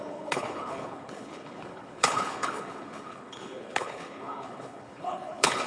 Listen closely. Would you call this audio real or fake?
fake